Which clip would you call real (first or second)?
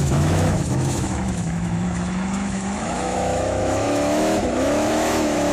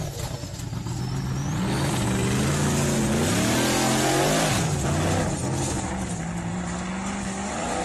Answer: second